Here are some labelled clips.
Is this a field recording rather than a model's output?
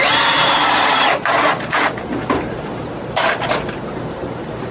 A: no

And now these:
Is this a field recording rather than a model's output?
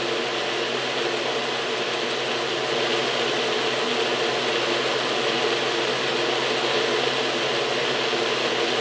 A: yes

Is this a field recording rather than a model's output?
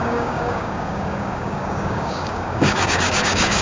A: no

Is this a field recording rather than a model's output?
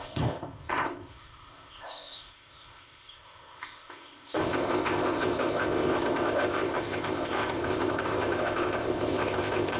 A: no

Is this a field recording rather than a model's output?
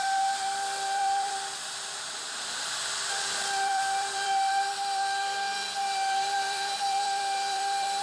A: no